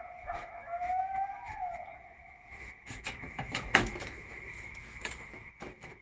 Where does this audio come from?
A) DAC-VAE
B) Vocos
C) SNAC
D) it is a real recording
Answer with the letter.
A